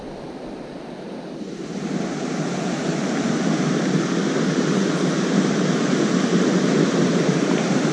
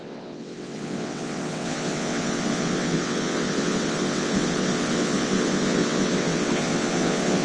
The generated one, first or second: second